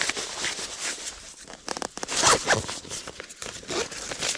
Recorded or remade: recorded